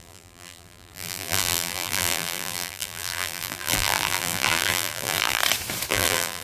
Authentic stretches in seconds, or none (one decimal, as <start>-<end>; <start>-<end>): 5.4-5.9